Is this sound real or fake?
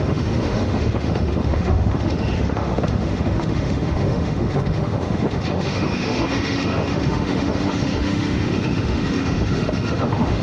fake